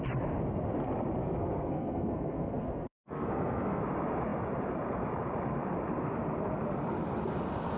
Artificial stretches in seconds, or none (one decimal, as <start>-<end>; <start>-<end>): 1.2-3.8